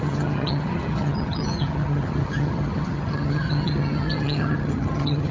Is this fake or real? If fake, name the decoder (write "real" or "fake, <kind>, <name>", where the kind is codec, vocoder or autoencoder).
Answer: fake, vocoder, HiFi-GAN